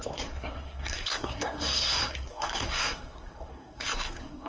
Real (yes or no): no